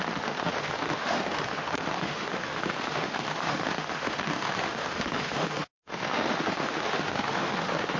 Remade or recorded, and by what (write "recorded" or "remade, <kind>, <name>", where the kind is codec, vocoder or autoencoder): remade, autoencoder, DAC-VAE